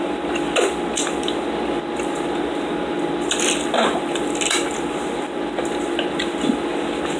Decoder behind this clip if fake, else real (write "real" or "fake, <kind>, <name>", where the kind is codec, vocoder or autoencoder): real